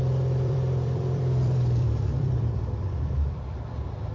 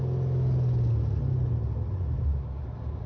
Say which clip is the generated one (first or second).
first